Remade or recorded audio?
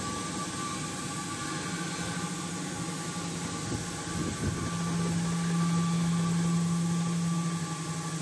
recorded